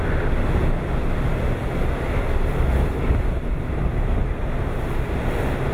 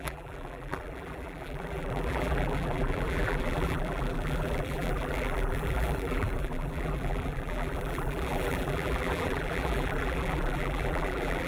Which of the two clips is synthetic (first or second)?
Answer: second